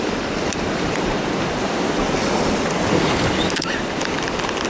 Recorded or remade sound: remade